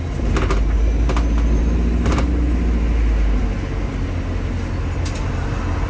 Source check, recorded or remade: recorded